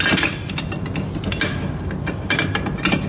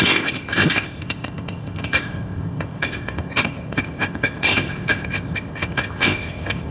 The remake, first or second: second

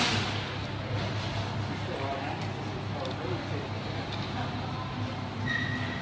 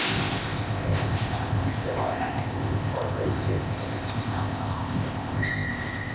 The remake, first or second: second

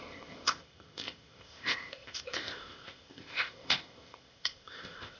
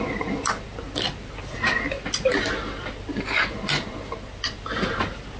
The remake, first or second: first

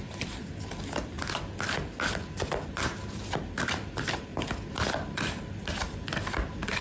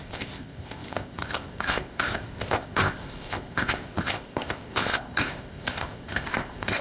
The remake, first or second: second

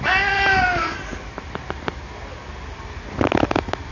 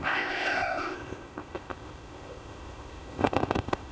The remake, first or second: second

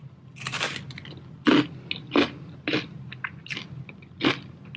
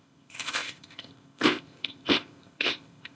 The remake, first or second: second